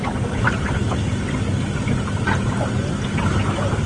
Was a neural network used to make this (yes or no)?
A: no